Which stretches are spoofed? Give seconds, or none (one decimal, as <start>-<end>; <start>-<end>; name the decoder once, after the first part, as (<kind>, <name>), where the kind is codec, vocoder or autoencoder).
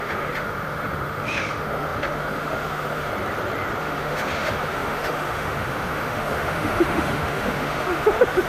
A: 0.0-3.1 (autoencoder, DAC-VAE); 3.8-8.5